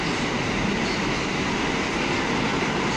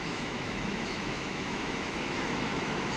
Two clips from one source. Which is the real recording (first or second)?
first